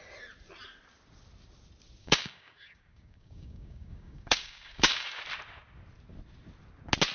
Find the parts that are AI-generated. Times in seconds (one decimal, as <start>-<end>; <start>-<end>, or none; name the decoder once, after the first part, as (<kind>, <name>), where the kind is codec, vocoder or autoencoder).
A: 2.0-5.2 (codec, DAC)

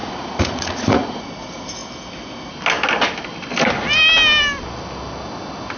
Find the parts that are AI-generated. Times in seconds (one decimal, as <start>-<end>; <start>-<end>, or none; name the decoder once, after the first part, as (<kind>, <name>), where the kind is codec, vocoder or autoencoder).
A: 0.0-1.3 (vocoder, Vocos)